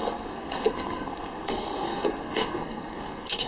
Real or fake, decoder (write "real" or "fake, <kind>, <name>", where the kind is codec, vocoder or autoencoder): fake, codec, SNAC